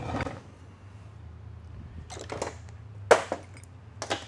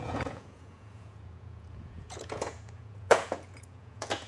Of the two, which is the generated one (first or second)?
second